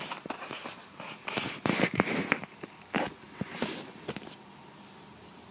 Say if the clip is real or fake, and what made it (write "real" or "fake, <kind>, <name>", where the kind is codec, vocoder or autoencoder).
real